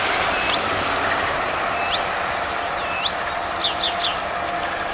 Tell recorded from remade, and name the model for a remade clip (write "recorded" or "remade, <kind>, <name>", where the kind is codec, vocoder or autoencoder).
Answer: recorded